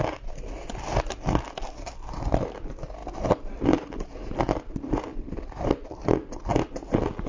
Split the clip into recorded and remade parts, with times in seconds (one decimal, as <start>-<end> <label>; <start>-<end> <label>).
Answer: 0.0-7.3 recorded